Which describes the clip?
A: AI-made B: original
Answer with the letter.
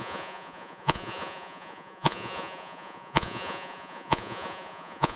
A